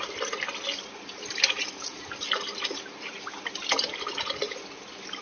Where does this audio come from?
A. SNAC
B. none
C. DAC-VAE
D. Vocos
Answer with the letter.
B